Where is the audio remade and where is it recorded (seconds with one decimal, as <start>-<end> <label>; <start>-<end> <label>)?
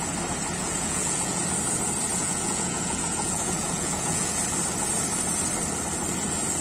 0.0-0.6 recorded; 0.6-1.4 remade; 1.4-2.1 recorded; 2.1-4.4 remade; 4.4-6.6 recorded